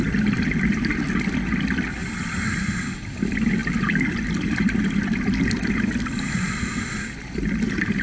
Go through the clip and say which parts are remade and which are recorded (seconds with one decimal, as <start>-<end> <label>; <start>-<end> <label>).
0.0-8.0 recorded